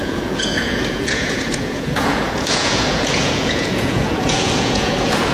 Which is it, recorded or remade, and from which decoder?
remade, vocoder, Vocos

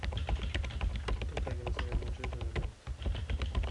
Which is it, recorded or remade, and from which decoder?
recorded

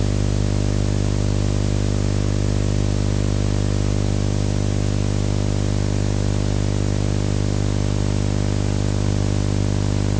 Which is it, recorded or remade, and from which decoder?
recorded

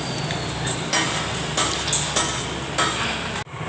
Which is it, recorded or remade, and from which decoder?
recorded